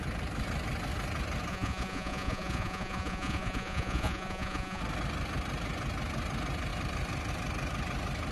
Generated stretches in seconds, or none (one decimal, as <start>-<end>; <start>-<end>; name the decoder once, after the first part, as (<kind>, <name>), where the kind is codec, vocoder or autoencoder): 1.5-4.8 (vocoder, Vocos)